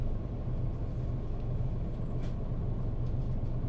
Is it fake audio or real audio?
real